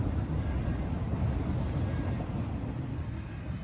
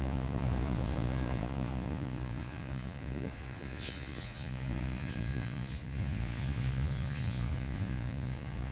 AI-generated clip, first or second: second